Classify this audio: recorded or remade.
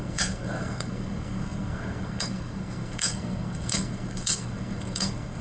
remade